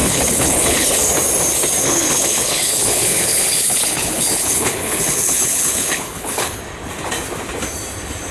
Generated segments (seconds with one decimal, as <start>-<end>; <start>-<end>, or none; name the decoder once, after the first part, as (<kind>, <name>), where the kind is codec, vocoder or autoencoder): 0.0-1.0 (codec, HILCodec); 1.8-6.6